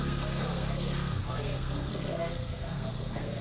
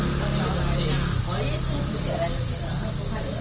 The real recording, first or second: second